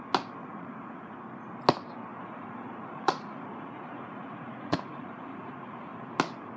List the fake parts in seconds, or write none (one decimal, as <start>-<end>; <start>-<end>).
0.4-1.1; 2.1-6.1